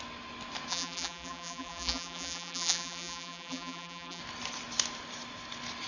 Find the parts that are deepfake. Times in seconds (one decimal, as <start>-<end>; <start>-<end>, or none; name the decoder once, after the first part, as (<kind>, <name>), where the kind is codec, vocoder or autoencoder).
0.7-4.2 (vocoder, BigVGAN v2)